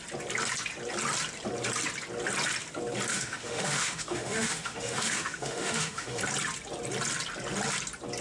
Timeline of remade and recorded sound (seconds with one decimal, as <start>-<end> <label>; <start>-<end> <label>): 0.0-3.1 recorded; 3.1-6.2 remade; 6.2-8.2 recorded